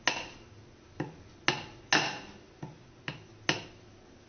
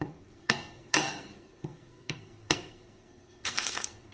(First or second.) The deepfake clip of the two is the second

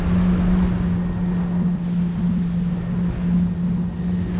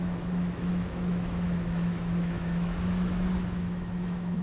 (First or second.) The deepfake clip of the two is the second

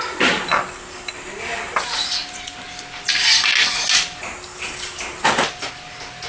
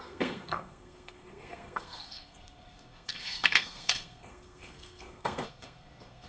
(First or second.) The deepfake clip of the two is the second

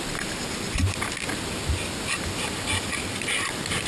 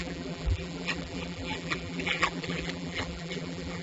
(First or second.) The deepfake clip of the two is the second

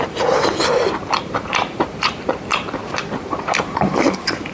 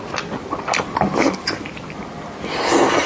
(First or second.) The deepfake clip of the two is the first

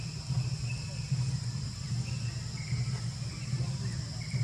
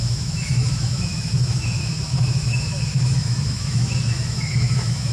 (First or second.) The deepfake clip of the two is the second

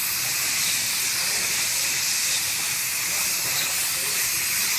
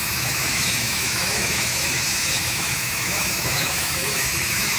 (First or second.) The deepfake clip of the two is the second